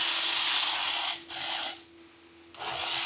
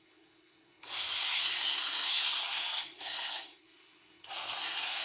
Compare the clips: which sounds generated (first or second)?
second